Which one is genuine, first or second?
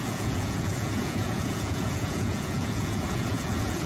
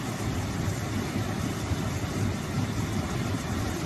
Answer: second